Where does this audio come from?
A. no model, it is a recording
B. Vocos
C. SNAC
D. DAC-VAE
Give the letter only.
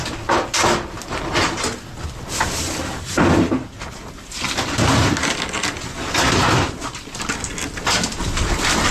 A